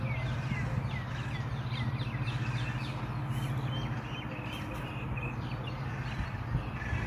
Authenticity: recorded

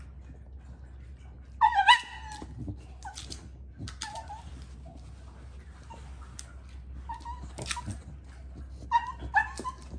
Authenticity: recorded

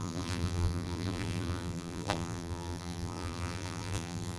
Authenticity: remade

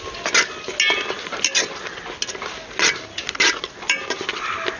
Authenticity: recorded